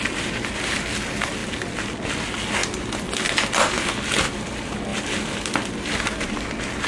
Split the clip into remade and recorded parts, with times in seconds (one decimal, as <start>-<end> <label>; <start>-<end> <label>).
0.0-6.9 recorded